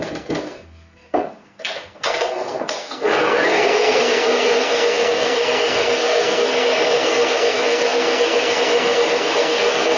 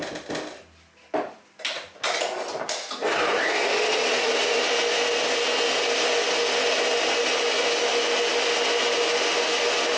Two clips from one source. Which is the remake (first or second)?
first